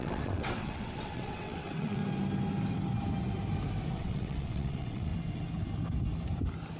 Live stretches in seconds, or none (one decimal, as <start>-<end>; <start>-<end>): 2.0-3.9; 5.1-6.8